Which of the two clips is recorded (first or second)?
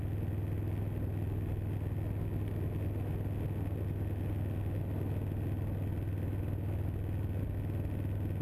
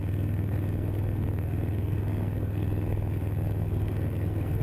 first